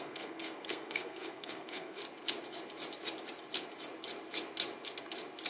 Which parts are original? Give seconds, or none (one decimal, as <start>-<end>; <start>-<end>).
2.0-5.5

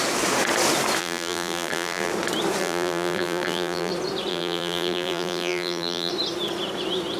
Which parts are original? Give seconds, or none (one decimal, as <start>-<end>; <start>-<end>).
0.0-1.0; 2.1-2.6; 3.9-4.3; 6.1-7.2